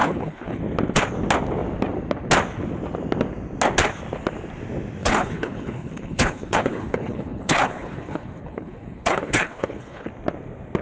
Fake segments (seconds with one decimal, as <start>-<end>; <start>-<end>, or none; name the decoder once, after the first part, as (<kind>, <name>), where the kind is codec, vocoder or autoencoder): 0.0-0.6 (codec, HILCodec); 5.0-10.1